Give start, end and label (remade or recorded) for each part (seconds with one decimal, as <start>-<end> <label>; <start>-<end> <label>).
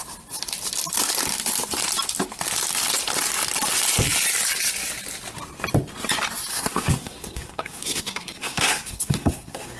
0.0-6.5 recorded; 6.5-9.8 remade